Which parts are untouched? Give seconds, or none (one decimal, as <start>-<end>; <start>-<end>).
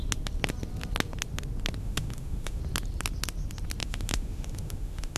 0.0-1.8; 2.6-3.8